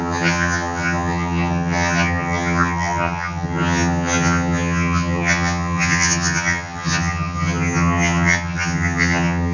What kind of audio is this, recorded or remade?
remade